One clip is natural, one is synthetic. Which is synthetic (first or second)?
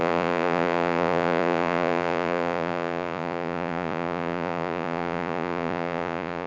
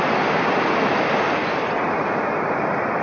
first